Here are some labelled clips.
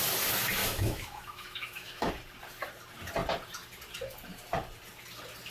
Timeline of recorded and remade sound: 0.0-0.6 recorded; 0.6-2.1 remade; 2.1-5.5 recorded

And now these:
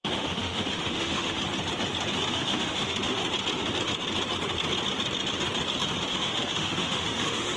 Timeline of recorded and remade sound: 0.0-1.4 remade; 1.4-2.3 recorded; 2.3-3.2 remade; 3.2-6.1 recorded; 6.1-7.6 remade

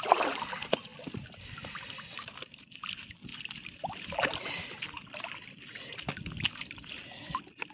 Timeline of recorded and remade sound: 0.0-7.7 recorded

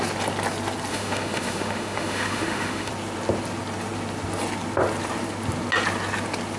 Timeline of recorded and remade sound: 0.0-0.9 recorded; 0.9-2.9 remade; 2.9-6.6 recorded

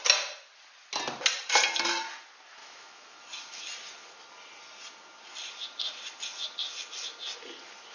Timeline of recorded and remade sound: 0.0-2.6 recorded; 2.6-3.2 remade; 3.2-7.9 recorded

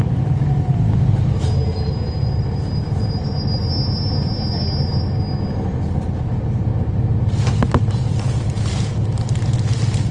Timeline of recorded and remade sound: 0.0-10.1 recorded

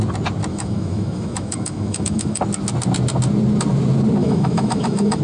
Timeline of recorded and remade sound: 0.0-0.5 recorded; 0.5-2.4 remade; 2.4-4.2 recorded; 4.2-5.2 remade

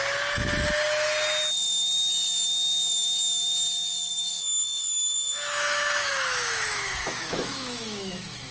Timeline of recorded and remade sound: 0.0-4.4 recorded; 4.4-8.5 remade